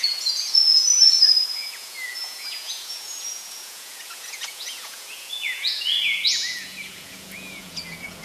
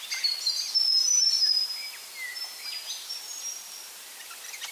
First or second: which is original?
second